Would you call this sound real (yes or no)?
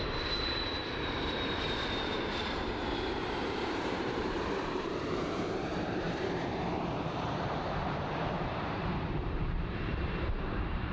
no